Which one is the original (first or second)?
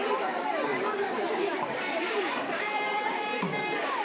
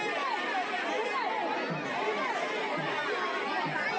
second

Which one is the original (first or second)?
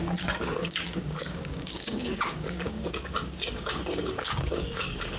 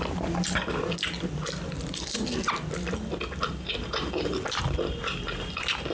second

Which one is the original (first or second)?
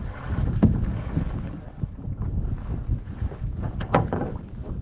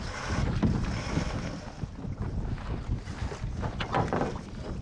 second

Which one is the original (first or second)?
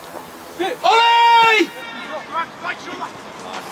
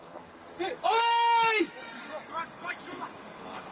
first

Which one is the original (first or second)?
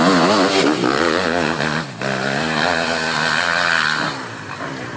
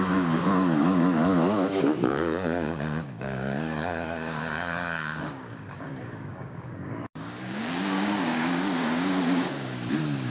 first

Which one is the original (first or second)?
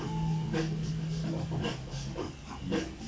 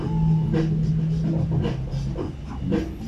second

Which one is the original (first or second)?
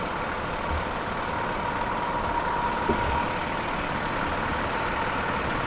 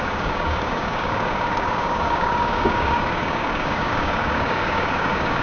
first